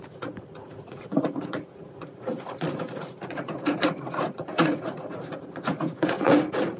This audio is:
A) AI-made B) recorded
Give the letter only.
A